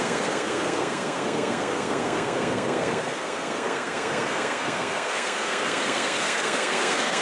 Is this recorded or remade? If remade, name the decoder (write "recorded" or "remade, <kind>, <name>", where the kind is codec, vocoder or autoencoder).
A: remade, codec, SNAC